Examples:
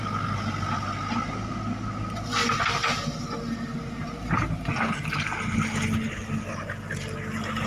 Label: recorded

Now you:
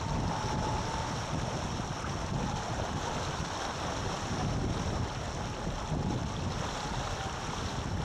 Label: recorded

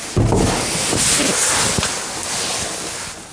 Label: recorded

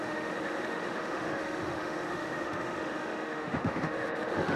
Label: remade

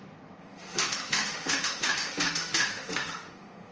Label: remade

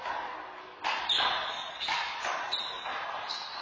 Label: recorded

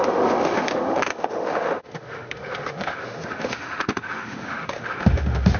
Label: remade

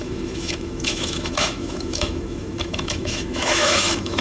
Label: remade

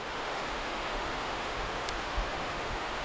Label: remade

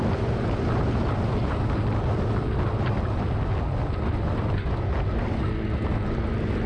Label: recorded